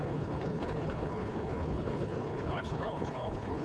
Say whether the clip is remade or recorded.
remade